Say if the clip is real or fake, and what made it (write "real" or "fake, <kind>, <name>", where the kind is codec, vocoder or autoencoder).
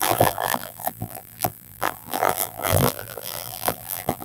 fake, vocoder, BigVGAN v2